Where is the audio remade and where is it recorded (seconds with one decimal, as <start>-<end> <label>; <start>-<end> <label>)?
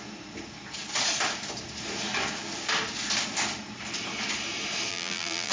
0.0-4.9 recorded; 4.9-5.5 remade